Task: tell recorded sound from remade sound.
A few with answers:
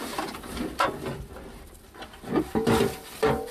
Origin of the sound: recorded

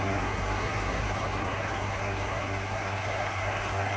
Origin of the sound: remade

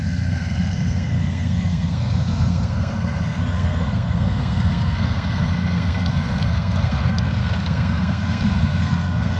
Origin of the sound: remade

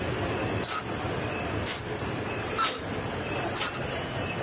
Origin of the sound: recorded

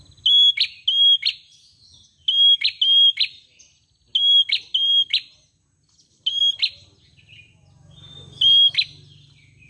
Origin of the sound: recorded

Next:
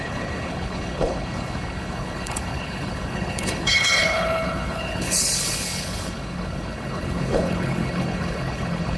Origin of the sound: remade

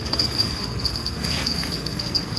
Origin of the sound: remade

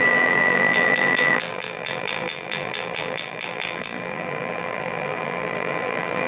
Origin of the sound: remade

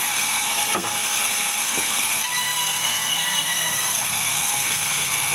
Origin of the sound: remade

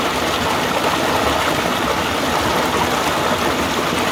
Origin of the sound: recorded